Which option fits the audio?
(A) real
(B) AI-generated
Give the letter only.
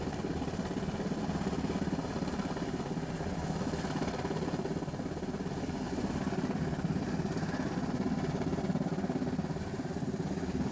A